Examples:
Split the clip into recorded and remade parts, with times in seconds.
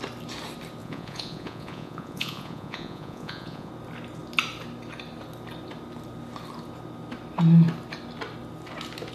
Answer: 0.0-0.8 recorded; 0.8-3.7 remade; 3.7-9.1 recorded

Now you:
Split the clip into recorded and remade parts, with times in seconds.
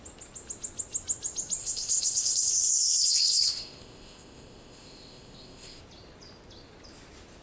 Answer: 0.0-1.6 recorded; 1.6-5.8 remade; 5.8-7.4 recorded